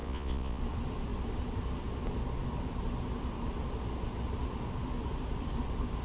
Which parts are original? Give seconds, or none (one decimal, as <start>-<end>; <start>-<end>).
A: 0.6-6.0